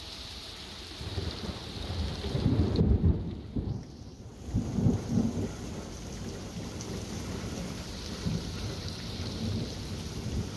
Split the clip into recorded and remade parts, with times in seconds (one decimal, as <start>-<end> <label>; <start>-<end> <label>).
0.0-4.3 remade; 4.3-6.4 recorded; 6.4-10.6 remade